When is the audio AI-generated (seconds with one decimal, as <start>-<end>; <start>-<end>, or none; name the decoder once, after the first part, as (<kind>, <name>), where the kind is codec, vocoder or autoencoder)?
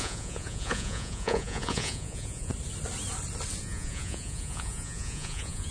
0.0-2.5 (vocoder, Vocos); 3.6-5.7